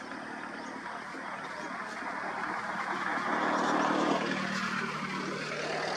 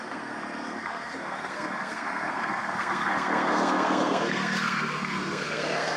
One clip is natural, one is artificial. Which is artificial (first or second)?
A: second